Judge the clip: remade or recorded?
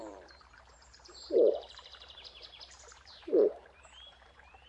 remade